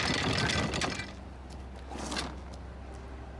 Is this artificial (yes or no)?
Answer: no